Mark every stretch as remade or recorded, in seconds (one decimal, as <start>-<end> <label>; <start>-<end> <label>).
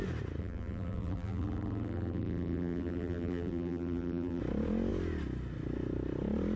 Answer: 0.0-0.4 recorded; 0.4-4.4 remade; 4.4-6.6 recorded